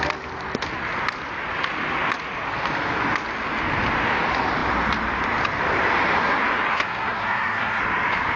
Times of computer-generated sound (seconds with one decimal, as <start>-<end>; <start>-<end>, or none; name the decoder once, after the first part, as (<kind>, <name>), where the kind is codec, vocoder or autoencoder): 6.7-7.8 (codec, SNAC)